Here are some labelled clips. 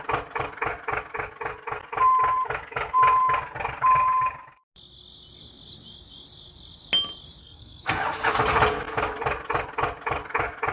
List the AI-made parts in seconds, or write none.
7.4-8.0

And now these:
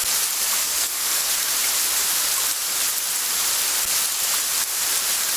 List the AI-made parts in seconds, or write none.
0.6-1.3